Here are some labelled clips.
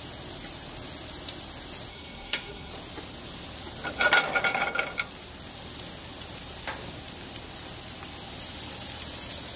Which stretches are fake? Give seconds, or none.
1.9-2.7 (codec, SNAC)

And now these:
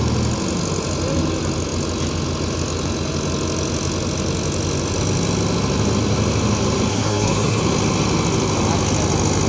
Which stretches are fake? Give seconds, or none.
6.9-7.6 (codec, SNAC)